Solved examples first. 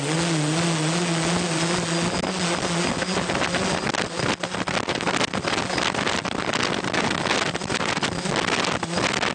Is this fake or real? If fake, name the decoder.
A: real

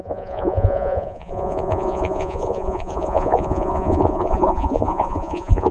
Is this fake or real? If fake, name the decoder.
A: fake, vocoder, Vocos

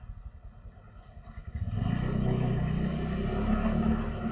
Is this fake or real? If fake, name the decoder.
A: real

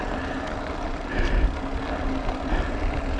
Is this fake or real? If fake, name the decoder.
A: real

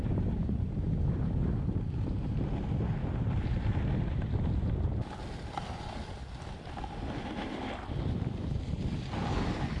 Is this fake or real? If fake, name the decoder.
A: real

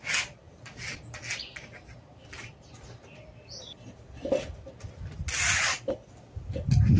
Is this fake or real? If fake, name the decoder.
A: real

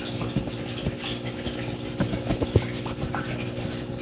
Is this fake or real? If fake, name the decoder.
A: real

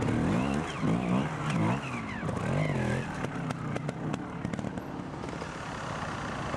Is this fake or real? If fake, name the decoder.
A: real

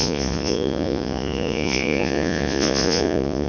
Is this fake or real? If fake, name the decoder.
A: fake, vocoder, Vocos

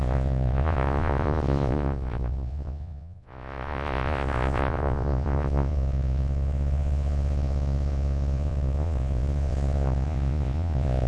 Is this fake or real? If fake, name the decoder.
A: fake, vocoder, Vocos